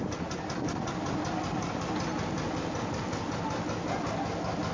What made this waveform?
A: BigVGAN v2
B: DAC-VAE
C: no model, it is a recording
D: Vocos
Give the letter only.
C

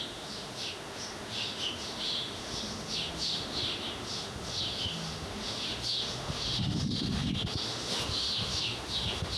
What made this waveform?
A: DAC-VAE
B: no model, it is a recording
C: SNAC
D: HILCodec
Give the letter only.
A